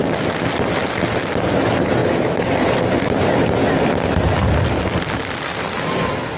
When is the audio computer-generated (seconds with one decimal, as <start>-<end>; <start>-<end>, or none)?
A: none